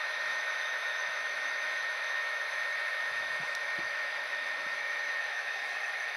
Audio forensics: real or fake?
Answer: fake